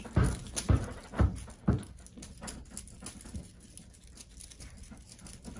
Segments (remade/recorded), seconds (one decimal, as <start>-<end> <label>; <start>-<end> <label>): 0.0-5.6 recorded

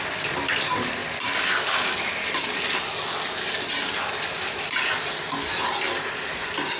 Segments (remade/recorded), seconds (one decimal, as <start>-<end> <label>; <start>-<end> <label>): 0.0-6.8 recorded

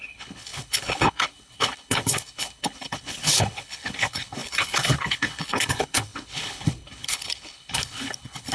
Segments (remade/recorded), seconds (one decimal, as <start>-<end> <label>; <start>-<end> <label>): 0.0-8.5 remade

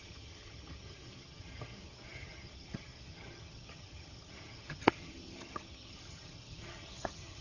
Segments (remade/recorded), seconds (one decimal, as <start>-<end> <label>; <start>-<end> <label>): 0.0-7.4 remade

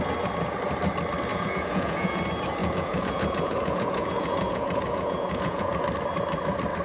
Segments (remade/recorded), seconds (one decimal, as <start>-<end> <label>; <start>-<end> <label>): 0.0-1.3 recorded; 1.3-2.2 remade; 2.2-2.6 recorded; 2.6-5.8 remade; 5.8-6.8 recorded

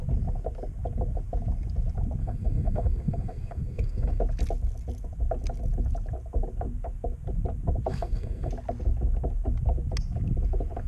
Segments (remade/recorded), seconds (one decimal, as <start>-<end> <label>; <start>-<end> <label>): 0.0-2.2 recorded; 2.2-4.2 remade; 4.2-7.9 recorded; 7.9-8.5 remade; 8.5-10.9 recorded

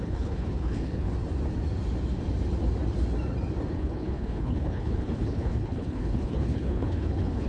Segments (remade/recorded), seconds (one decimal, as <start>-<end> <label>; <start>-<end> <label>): 0.0-1.1 remade; 1.1-3.7 recorded; 3.7-7.5 remade